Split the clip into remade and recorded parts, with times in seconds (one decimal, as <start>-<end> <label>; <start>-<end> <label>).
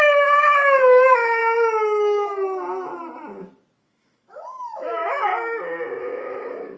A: 0.0-1.4 remade; 1.4-3.8 recorded; 3.8-5.3 remade; 5.3-6.0 recorded; 6.0-6.8 remade